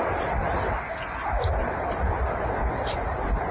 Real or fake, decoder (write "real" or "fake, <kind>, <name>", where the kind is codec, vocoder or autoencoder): real